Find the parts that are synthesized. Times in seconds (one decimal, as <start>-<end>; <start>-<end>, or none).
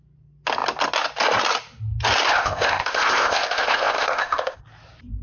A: 2.3-4.6